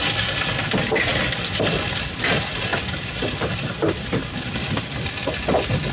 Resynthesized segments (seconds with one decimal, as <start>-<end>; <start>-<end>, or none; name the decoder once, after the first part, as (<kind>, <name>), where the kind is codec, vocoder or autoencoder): none